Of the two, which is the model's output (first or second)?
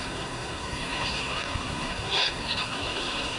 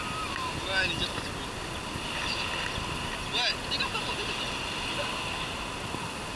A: first